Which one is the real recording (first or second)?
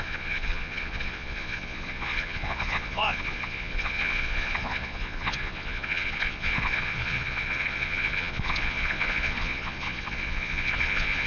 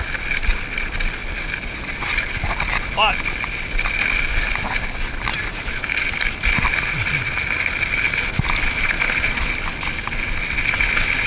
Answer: second